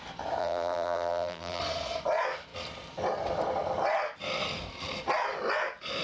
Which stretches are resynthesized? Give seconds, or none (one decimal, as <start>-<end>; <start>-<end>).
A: 0.4-1.6

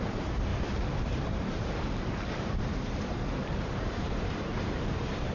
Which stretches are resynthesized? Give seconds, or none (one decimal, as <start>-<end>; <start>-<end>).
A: 0.0-5.3

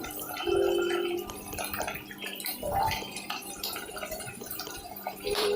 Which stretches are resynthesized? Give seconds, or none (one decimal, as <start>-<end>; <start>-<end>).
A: 2.3-5.6

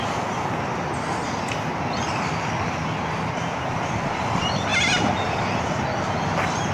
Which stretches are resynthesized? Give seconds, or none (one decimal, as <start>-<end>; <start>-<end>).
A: none

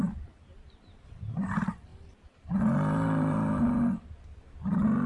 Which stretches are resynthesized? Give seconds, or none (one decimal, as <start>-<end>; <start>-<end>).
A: 0.0-1.9